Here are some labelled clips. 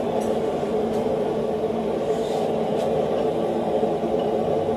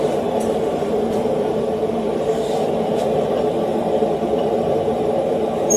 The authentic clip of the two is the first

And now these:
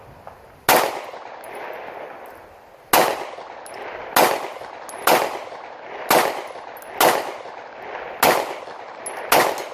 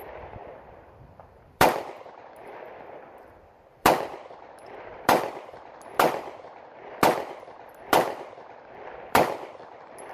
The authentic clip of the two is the first